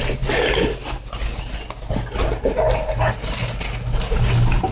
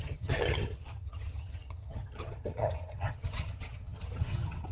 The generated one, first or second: second